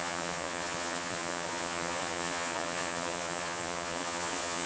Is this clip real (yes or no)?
no